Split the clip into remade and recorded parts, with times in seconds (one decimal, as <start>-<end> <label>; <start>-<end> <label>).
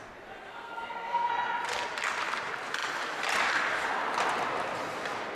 0.0-0.5 recorded; 0.5-1.3 remade; 1.3-5.3 recorded